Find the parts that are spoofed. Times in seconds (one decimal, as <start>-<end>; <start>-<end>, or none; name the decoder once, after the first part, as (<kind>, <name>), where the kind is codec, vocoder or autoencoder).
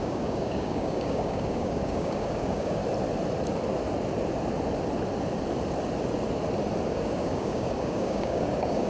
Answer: 0.0-2.8 (codec, DAC); 6.9-8.9